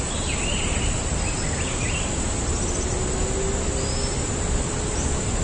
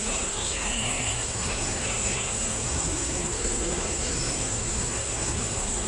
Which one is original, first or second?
first